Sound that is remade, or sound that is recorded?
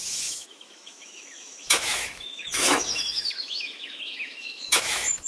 remade